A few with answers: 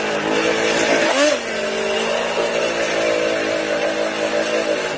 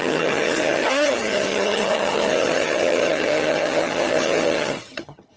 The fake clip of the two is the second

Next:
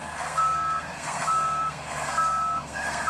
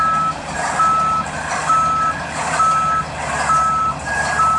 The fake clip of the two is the first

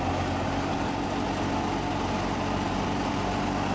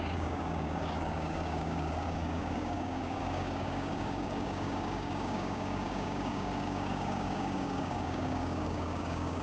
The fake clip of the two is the second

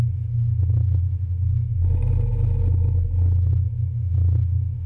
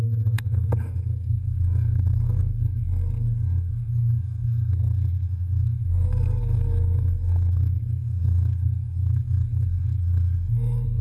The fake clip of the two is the second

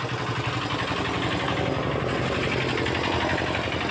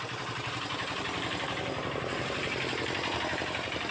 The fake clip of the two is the second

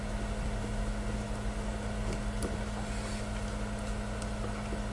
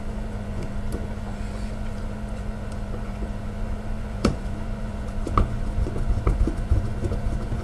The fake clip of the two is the second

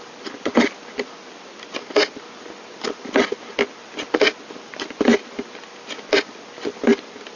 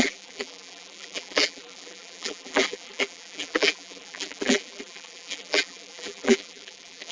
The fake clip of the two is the second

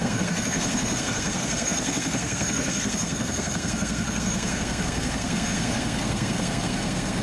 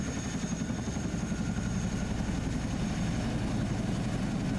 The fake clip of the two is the first